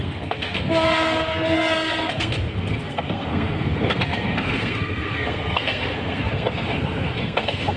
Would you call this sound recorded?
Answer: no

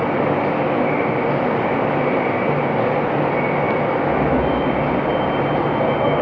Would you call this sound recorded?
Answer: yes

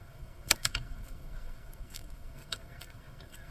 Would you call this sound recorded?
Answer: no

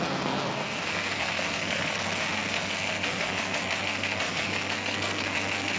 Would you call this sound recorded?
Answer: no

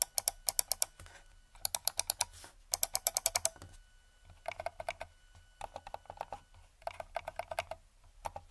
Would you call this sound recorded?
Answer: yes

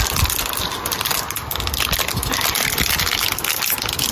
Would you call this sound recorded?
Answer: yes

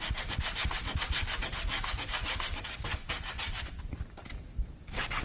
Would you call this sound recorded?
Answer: yes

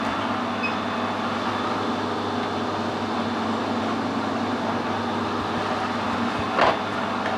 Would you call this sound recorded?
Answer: yes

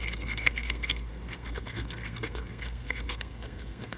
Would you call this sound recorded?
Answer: no